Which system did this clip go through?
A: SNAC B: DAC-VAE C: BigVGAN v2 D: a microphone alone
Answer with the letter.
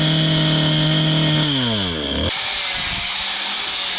D